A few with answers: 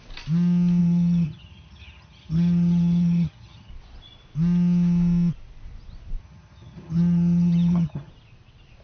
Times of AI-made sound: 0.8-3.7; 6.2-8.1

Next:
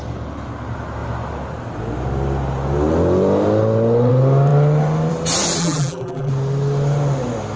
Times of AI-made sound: 5.6-6.3

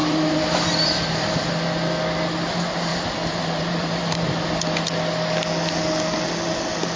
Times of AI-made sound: 0.0-1.4; 2.9-4.3

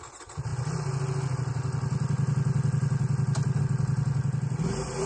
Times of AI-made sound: none

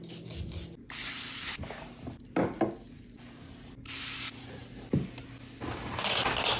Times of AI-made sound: none

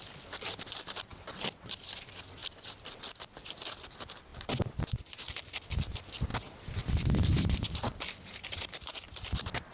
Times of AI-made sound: 2.4-3.4; 4.3-5.0; 6.3-7.2

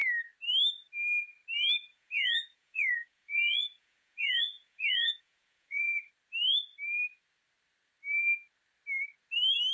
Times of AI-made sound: 1.9-6.1